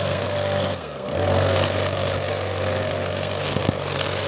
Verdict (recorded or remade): remade